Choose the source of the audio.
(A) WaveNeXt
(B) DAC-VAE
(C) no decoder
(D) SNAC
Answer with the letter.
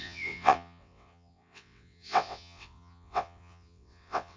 A